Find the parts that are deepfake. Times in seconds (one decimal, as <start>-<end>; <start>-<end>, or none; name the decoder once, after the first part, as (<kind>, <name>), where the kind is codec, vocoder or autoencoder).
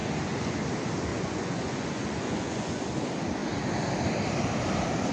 0.0-0.6 (vocoder, Vocos); 1.1-2.8